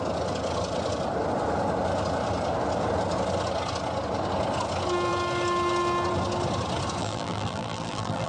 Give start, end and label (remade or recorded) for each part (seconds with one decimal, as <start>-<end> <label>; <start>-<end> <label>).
0.0-7.0 recorded; 7.0-8.3 remade